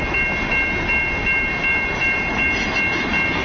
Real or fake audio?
real